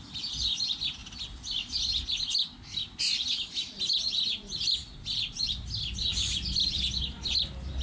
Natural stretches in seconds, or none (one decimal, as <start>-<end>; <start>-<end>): 0.0-7.8